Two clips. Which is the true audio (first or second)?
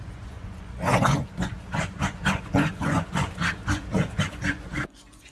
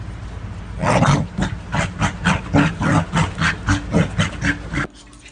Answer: second